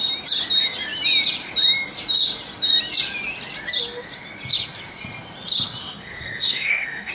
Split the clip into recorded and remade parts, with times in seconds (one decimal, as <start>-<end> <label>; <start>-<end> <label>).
0.0-5.8 recorded; 5.8-7.1 remade